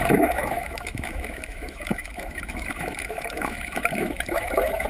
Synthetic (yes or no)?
yes